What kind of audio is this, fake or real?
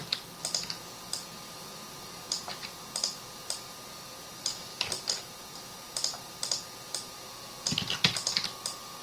real